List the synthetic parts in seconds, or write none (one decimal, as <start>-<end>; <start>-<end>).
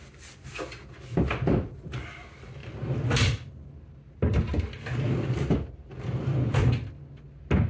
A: none